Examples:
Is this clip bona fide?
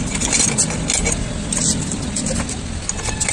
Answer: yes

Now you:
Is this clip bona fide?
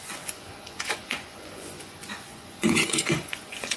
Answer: no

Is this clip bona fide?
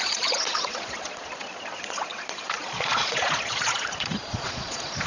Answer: no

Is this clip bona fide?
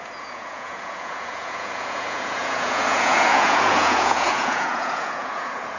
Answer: no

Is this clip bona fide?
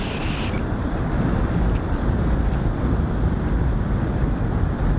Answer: yes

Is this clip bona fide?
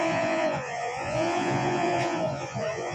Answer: no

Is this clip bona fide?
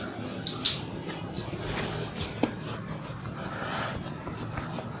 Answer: yes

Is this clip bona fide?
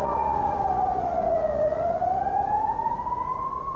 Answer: no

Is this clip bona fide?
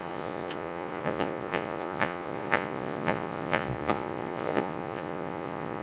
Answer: no